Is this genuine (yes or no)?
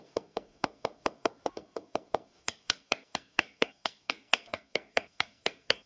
no